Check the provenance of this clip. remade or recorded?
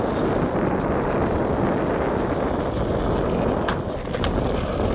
recorded